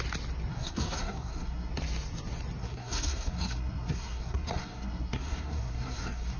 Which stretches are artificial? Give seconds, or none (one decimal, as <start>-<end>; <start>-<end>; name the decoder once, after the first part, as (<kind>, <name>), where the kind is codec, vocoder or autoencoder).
0.5-1.7 (codec, SNAC); 2.6-6.4